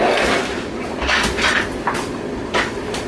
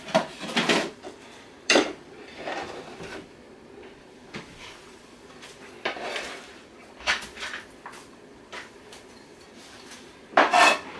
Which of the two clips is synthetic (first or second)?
second